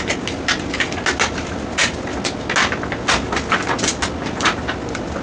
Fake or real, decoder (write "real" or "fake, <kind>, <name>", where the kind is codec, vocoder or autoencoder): real